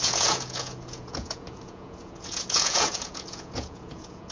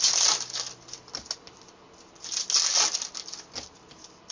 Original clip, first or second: second